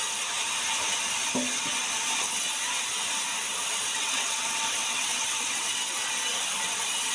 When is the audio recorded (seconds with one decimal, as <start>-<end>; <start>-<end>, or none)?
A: 0.0-3.9; 5.9-7.1